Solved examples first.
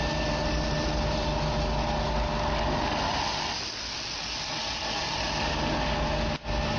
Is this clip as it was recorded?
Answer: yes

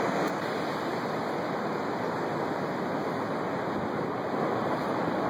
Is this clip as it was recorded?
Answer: yes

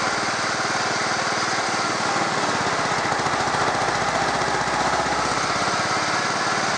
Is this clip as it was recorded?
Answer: yes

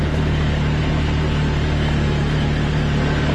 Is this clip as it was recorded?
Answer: yes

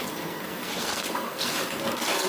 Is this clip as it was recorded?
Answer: no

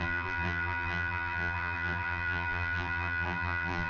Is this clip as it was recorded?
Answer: no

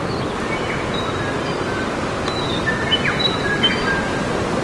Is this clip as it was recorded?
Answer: yes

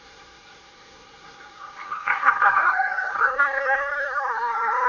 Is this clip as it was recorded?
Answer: no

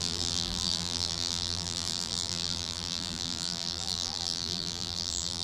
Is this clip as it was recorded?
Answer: no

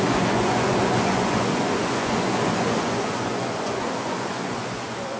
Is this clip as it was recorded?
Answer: no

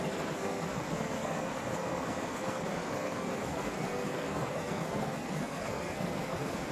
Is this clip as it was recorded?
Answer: no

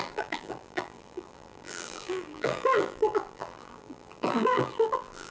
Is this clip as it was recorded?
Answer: no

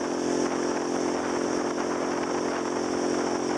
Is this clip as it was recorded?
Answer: yes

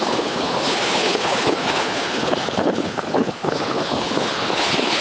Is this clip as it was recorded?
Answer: no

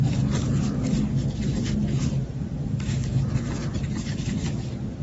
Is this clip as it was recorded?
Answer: yes